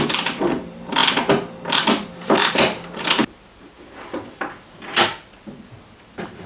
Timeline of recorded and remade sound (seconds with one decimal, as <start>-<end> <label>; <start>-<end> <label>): 0.0-1.0 remade; 1.0-1.8 recorded; 1.8-3.2 remade; 3.2-6.1 recorded; 6.1-6.5 remade